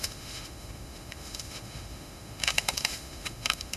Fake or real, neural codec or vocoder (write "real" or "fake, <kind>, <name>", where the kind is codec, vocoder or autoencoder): fake, autoencoder, DAC-VAE